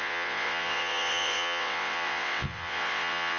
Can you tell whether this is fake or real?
fake